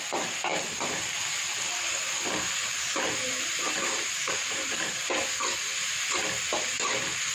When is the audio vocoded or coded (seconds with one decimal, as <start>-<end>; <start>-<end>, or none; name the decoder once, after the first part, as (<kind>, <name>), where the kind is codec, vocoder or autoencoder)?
2.6-4.7 (vocoder, BigVGAN v2)